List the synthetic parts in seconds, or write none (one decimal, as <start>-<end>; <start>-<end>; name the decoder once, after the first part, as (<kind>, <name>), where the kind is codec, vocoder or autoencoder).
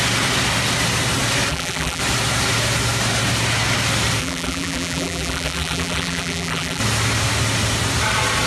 1.5-2.0 (vocoder, BigVGAN v2); 4.2-6.8